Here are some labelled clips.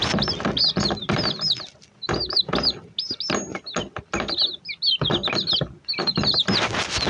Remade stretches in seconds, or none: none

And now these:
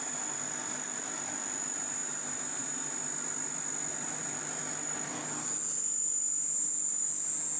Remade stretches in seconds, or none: none

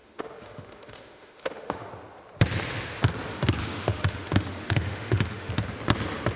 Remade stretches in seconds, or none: 0.0-1.9; 3.6-5.5

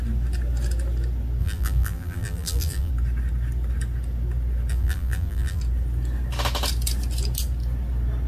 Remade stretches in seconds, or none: 1.4-2.9; 4.7-5.6

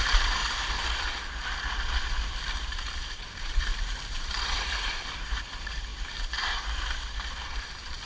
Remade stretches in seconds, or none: 0.0-0.4; 2.7-5.9; 7.4-8.1

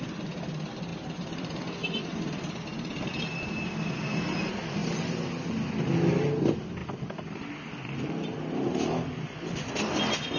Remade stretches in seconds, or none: none